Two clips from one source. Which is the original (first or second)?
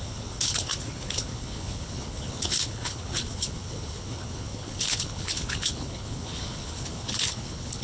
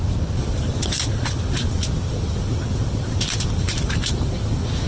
second